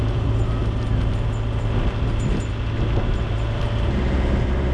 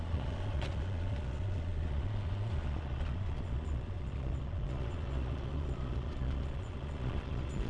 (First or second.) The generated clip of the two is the second